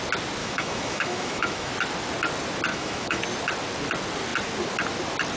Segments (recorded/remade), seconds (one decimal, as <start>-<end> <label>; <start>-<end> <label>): 0.0-0.4 recorded; 0.4-1.7 remade; 1.7-2.7 recorded; 2.7-3.2 remade; 3.2-5.4 recorded